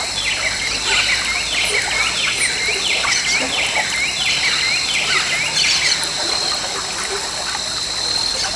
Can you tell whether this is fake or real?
real